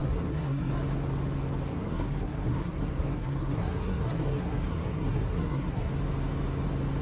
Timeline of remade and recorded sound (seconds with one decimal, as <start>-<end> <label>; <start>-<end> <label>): 0.0-0.7 remade; 0.7-1.7 recorded; 1.7-5.9 remade; 5.9-7.0 recorded